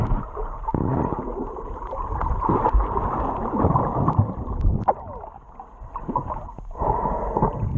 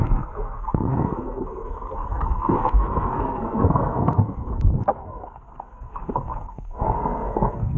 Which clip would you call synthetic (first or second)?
second